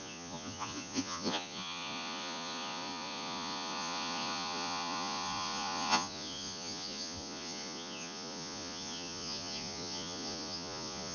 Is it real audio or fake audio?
fake